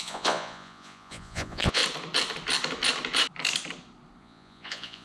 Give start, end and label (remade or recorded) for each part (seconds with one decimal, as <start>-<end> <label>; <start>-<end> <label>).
0.0-1.8 remade; 1.8-4.2 recorded; 4.2-5.0 remade

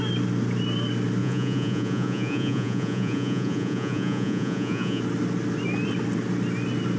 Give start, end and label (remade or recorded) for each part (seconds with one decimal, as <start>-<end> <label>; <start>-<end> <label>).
0.0-1.2 recorded; 1.2-5.0 remade; 5.0-7.0 recorded

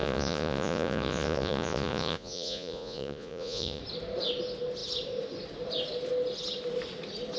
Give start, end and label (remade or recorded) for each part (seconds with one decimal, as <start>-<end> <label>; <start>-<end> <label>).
0.0-3.8 remade; 3.8-7.4 recorded

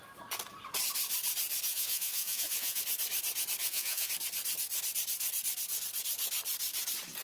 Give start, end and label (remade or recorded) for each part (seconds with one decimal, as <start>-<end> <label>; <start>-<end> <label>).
0.0-1.7 recorded; 1.7-2.8 remade; 2.8-3.6 recorded; 3.6-4.1 remade; 4.1-7.2 recorded

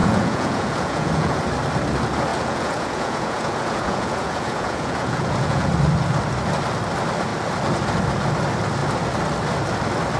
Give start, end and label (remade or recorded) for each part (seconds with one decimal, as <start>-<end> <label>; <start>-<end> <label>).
0.0-1.4 remade; 1.4-2.3 recorded; 2.3-5.7 remade; 5.7-10.2 recorded

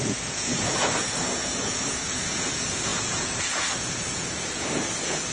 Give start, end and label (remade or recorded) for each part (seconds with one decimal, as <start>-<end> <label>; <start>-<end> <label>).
0.0-5.3 remade

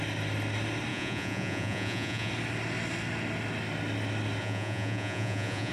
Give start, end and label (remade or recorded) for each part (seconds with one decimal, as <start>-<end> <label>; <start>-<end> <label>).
0.0-0.9 recorded; 0.9-2.3 remade; 2.3-4.4 recorded; 4.4-5.7 remade